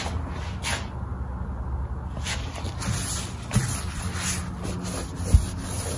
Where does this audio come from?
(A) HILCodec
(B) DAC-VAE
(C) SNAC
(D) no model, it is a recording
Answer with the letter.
D